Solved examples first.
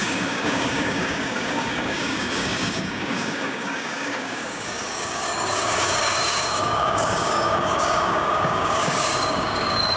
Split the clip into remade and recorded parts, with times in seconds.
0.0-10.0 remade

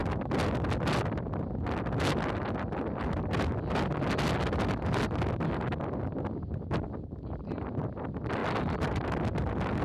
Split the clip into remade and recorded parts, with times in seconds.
0.0-9.8 recorded

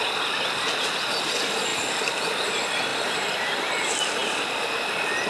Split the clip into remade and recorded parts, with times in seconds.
0.0-1.7 recorded; 1.7-2.3 remade; 2.3-2.9 recorded; 2.9-3.7 remade; 3.7-5.3 recorded

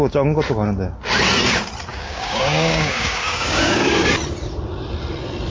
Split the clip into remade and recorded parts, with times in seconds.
0.0-1.9 recorded; 1.9-4.1 remade; 4.1-5.5 recorded